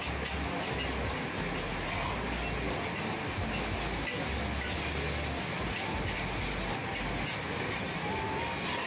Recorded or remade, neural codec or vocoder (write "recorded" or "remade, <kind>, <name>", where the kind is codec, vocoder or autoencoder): recorded